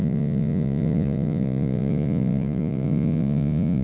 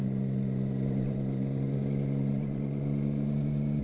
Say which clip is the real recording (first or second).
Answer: second